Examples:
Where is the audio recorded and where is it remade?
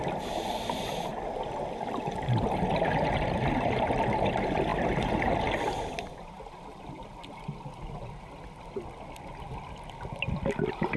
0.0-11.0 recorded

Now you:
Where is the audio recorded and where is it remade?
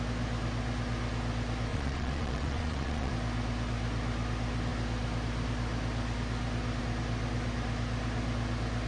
0.0-1.7 recorded; 1.7-3.1 remade; 3.1-8.9 recorded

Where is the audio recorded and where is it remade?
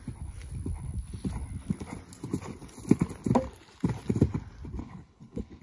0.0-4.8 recorded; 4.8-5.6 remade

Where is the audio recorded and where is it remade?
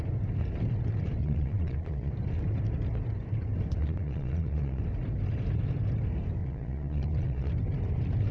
0.0-1.2 recorded; 1.2-2.1 remade; 2.1-3.8 recorded; 3.8-4.8 remade; 4.8-6.4 recorded; 6.4-7.5 remade; 7.5-8.3 recorded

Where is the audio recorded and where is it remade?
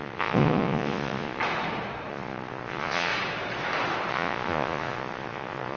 0.0-1.4 remade; 1.4-2.1 recorded; 2.1-3.1 remade; 3.1-4.1 recorded; 4.1-5.8 remade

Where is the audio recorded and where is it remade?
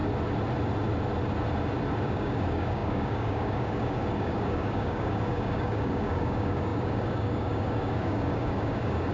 0.0-2.0 recorded; 2.0-9.1 remade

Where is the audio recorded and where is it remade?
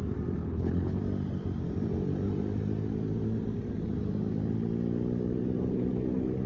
0.0-0.4 recorded; 0.4-1.0 remade; 1.0-6.5 recorded